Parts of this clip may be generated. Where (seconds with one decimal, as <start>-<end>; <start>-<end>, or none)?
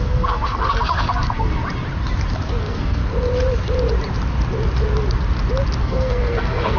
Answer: 0.0-1.6; 2.6-3.0; 5.8-6.8